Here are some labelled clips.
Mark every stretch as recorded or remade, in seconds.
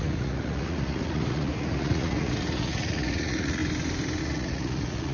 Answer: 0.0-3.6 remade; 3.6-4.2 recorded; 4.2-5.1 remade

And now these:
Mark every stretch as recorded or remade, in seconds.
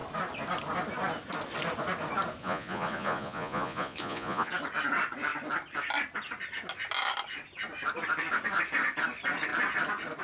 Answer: 0.0-2.4 recorded; 2.4-4.5 remade; 4.5-10.2 recorded